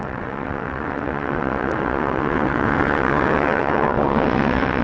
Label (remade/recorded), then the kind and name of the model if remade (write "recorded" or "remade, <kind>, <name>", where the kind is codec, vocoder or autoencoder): remade, vocoder, WaveNeXt